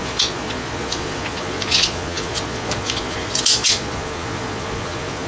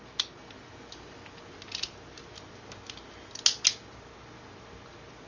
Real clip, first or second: second